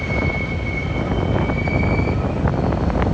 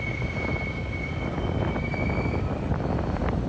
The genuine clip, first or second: first